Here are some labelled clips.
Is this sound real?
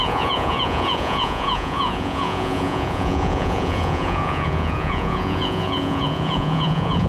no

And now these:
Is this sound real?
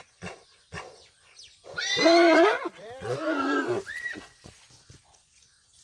no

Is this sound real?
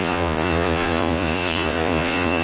no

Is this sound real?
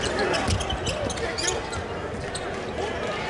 yes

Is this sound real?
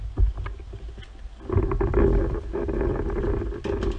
yes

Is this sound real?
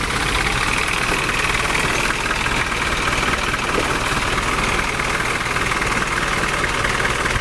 yes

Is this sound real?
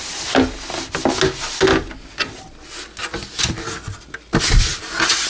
yes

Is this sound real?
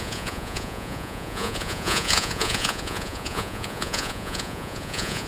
no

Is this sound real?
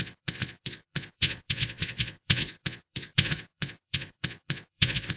no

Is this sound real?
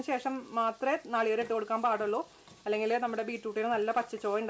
yes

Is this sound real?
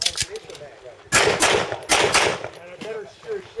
yes